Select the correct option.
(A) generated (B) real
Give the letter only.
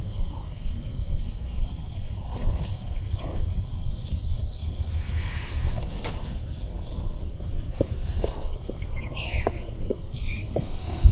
A